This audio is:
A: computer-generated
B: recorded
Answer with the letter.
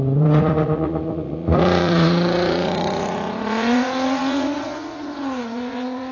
A